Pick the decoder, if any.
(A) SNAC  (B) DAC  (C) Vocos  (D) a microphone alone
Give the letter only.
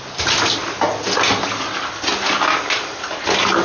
D